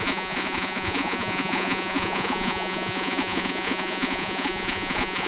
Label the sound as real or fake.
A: fake